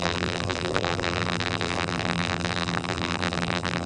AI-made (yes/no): yes